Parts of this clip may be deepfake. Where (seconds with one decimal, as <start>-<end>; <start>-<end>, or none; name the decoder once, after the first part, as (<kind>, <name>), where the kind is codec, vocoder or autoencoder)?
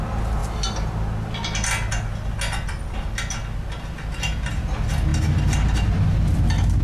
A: none